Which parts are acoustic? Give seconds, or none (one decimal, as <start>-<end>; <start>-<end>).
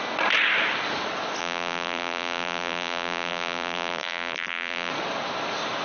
0.0-1.4; 4.9-5.8